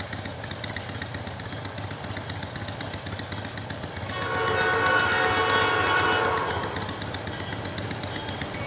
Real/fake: real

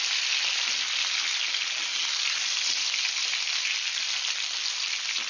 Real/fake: real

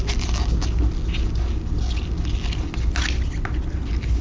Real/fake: real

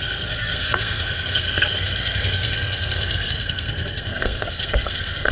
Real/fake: fake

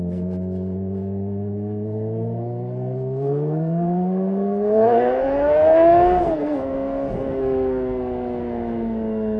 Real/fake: fake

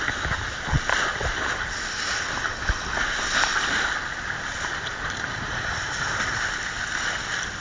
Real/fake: real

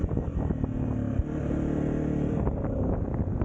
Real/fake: real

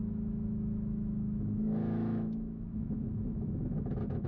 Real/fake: fake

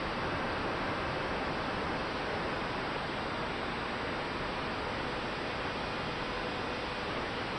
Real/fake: real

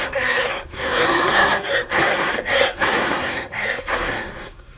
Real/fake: fake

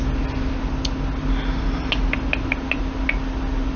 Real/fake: real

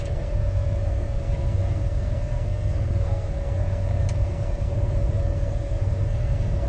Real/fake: fake